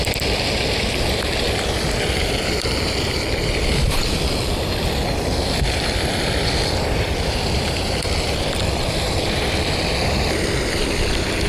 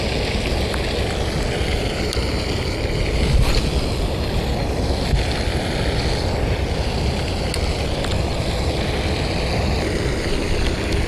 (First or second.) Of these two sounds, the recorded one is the second